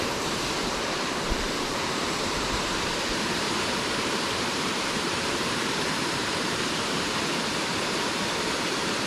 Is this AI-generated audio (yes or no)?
yes